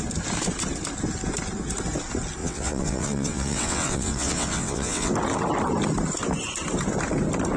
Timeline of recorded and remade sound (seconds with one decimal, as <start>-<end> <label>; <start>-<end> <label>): 0.0-2.4 recorded; 2.4-5.1 remade; 5.1-7.6 recorded

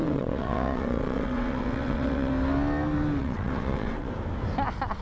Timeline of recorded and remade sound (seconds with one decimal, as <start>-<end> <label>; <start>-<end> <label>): 0.0-2.3 remade; 2.3-3.2 recorded; 3.2-4.1 remade; 4.1-5.0 recorded

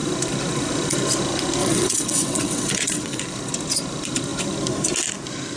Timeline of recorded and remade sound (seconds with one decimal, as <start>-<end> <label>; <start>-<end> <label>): 0.0-1.6 recorded; 1.6-3.2 remade; 3.2-5.6 recorded

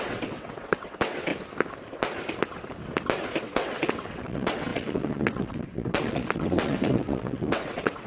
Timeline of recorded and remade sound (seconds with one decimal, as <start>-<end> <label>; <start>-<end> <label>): 0.0-1.3 remade; 1.3-3.4 recorded; 3.4-8.1 remade

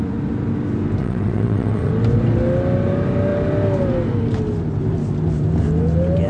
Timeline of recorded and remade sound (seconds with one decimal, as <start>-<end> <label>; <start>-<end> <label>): 0.0-1.0 recorded; 1.0-1.9 remade; 1.9-6.3 recorded

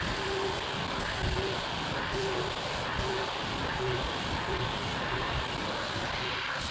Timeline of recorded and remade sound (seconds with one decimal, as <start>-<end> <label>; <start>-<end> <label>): 0.0-6.7 recorded

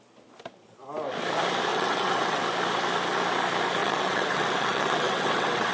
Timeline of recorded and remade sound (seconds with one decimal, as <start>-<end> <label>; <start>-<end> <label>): 0.0-1.7 recorded; 1.7-2.4 remade; 2.4-3.8 recorded; 3.8-5.7 remade

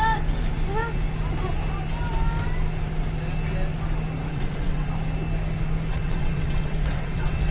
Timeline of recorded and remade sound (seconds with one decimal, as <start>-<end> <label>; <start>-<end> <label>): 0.0-4.3 recorded; 4.3-4.9 remade; 4.9-5.9 recorded; 5.9-7.5 remade